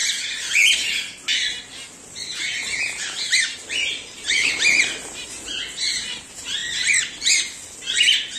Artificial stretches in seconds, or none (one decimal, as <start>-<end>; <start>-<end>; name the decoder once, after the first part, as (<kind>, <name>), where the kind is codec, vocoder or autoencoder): 2.4-6.6 (vocoder, BigVGAN v2); 7.7-8.4